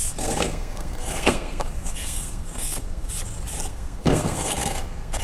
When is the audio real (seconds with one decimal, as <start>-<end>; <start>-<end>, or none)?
3.1-3.7